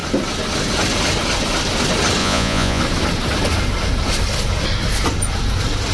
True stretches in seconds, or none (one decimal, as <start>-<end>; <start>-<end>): 0.0-2.2; 2.8-5.9